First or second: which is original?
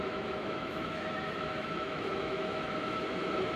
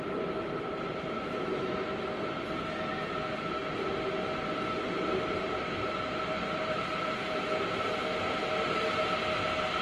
second